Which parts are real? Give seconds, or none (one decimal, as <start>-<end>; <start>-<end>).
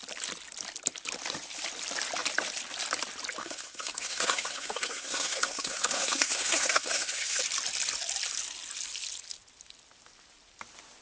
0.0-3.4; 7.4-11.0